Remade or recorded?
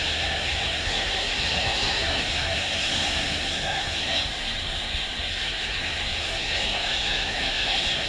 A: remade